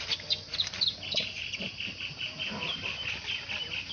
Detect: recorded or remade recorded